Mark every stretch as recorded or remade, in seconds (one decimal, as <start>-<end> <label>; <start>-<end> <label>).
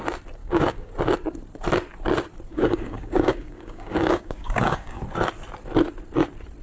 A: 0.0-0.4 recorded; 0.4-0.9 remade; 0.9-2.5 recorded; 2.5-5.0 remade; 5.0-6.6 recorded